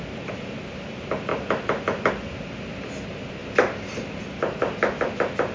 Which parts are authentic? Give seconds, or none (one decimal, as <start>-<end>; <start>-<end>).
0.0-5.5